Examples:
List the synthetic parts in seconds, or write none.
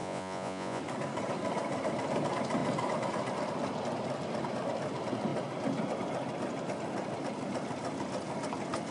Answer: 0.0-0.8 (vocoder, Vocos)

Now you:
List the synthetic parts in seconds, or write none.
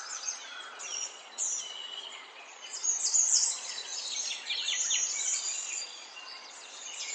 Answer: 0.0-3.9 (vocoder, Vocos); 5.0-7.1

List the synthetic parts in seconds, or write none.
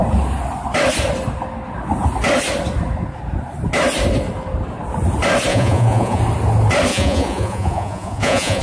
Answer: 5.5-6.2 (vocoder, Vocos); 6.9-8.6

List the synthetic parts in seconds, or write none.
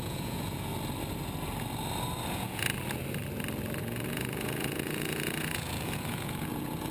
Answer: 0.0-0.7 (vocoder, Vocos); 2.3-2.7; 3.8-6.9